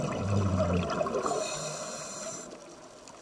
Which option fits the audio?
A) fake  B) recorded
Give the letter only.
B